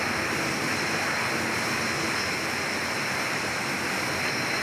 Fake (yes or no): no